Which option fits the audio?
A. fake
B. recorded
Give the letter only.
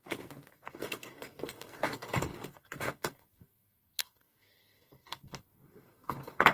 A